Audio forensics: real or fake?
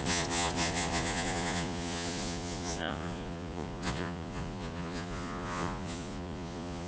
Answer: fake